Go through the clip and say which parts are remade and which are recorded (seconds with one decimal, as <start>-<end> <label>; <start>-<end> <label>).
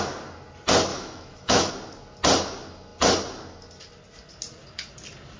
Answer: 0.0-0.9 recorded; 0.9-1.7 remade; 1.7-5.4 recorded